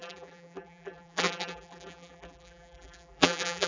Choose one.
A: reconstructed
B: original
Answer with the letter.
A